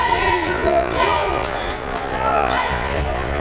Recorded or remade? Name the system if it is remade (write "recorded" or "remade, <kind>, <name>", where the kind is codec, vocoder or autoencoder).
remade, vocoder, Vocos